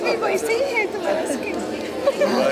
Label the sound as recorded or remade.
recorded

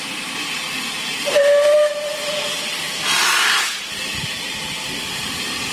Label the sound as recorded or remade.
recorded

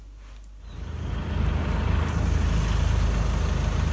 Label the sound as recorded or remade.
recorded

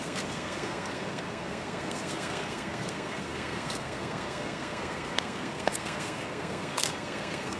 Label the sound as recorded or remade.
remade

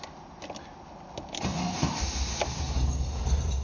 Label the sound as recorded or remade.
recorded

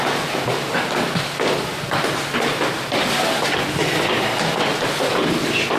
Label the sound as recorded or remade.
recorded